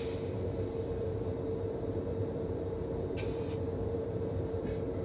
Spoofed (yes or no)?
yes